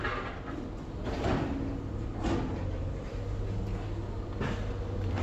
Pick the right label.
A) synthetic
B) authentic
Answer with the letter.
B